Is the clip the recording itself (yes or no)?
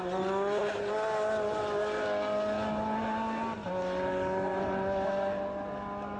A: yes